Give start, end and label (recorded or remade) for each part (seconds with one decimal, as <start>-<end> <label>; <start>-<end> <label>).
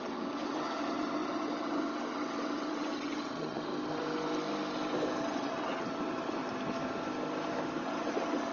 0.0-3.7 remade; 3.7-5.2 recorded; 5.2-6.4 remade; 6.4-7.8 recorded; 7.8-8.5 remade